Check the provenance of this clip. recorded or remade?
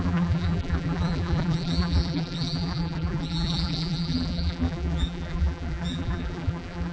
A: remade